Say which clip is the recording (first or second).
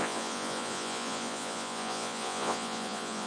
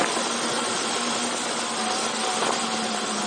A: second